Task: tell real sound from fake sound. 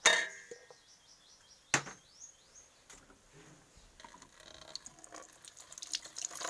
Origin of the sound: real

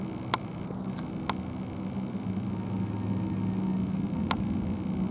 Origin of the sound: real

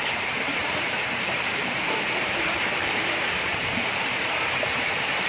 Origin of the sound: fake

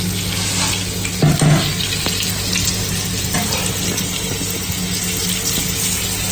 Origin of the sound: real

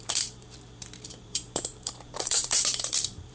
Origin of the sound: fake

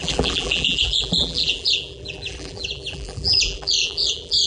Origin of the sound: fake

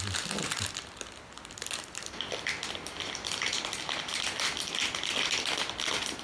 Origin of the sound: real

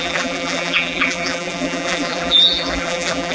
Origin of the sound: fake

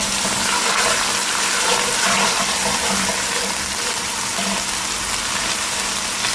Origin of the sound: real